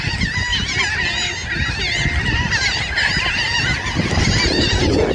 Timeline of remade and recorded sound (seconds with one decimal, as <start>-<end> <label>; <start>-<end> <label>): 0.0-5.1 recorded